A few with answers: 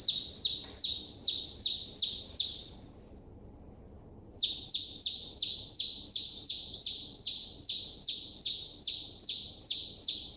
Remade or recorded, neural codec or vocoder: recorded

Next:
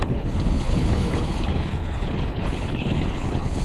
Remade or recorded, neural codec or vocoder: remade, codec, HILCodec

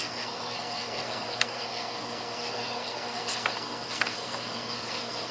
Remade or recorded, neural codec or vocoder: remade, codec, SNAC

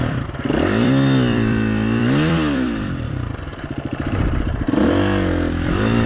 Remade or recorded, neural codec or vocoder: remade, vocoder, BigVGAN v2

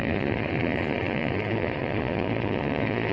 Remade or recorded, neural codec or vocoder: remade, vocoder, Vocos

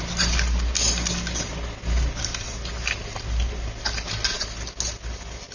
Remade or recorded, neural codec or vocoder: recorded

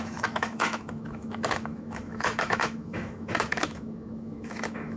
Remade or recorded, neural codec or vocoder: remade, autoencoder, DAC-VAE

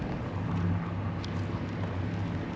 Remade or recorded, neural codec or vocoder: recorded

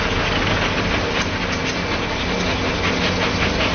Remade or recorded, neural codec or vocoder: recorded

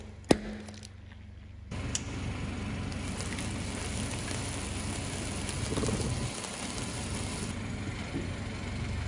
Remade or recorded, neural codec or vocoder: recorded